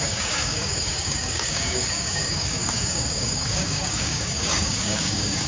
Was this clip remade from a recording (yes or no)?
yes